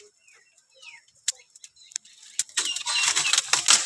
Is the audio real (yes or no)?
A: yes